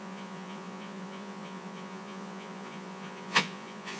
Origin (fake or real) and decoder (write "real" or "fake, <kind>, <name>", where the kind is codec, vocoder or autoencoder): fake, vocoder, Vocos